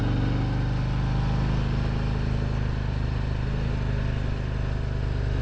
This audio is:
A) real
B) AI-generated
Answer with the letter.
A